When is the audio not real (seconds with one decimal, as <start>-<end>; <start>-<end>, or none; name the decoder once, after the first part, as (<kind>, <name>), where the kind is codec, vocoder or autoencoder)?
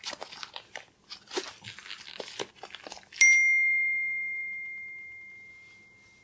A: none